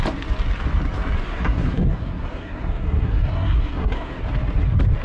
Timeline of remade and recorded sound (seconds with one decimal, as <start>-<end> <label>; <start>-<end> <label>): 0.0-1.2 recorded; 1.2-4.2 remade; 4.2-5.0 recorded